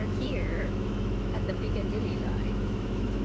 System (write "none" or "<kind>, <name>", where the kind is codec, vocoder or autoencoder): autoencoder, DAC-VAE